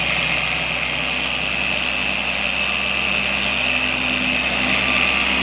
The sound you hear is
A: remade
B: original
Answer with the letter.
B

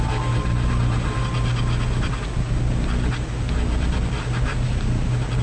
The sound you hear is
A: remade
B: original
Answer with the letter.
B